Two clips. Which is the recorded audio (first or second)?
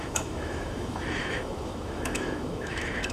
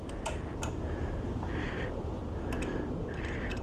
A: second